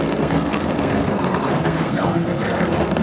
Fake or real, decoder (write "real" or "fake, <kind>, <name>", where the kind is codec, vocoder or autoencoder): fake, codec, SNAC